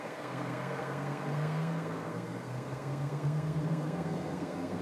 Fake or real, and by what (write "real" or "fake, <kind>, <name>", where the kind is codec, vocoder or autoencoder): fake, codec, SNAC